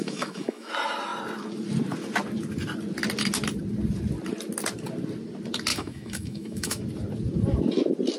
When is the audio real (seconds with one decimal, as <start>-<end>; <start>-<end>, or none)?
0.7-5.7; 6.8-8.2

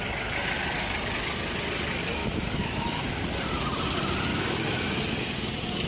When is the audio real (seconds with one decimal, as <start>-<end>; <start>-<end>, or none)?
0.0-2.2; 3.1-4.3; 5.0-5.9